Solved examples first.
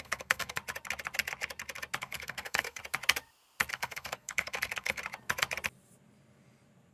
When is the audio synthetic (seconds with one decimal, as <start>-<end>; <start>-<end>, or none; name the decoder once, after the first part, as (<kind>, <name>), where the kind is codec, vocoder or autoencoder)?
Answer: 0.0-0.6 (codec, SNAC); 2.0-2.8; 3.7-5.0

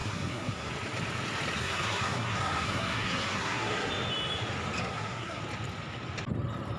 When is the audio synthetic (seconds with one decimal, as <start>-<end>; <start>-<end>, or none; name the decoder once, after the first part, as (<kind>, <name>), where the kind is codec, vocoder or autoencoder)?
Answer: 0.0-0.7 (codec, SNAC); 1.6-3.9; 4.8-5.4

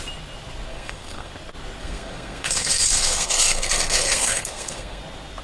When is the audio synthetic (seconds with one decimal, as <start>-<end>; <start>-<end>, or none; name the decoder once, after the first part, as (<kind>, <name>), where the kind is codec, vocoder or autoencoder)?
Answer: 0.7-1.3 (codec, SNAC); 1.8-5.0

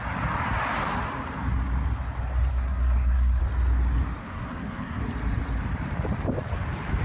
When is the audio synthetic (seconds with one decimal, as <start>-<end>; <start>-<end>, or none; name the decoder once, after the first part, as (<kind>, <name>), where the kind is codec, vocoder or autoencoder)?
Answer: 2.5-3.4 (codec, SNAC); 4.2-5.0

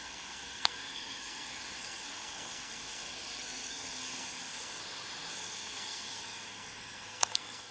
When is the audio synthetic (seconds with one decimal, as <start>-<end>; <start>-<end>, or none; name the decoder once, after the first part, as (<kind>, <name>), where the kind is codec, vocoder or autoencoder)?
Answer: 0.0-4.8 (codec, SNAC); 5.3-7.7

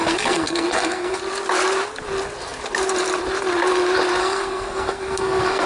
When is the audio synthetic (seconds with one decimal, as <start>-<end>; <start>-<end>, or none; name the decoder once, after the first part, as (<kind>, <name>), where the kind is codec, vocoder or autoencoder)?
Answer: 0.0-1.2 (codec, SNAC); 4.2-5.7